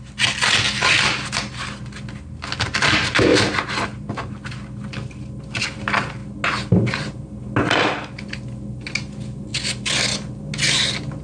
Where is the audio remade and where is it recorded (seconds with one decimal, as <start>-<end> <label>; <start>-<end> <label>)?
0.0-11.2 recorded